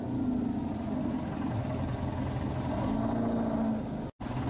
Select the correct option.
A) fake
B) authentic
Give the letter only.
B